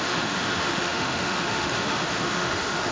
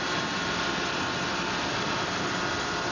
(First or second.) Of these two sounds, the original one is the second